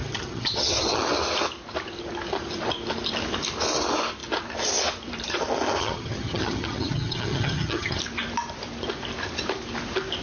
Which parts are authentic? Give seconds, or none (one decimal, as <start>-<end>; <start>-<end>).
1.0-5.8; 8.0-10.2